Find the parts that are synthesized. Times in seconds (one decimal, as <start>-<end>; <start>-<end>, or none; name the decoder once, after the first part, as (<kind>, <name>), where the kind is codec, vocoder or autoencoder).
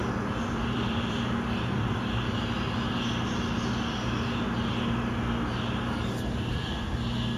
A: 0.0-1.4 (vocoder, BigVGAN v2)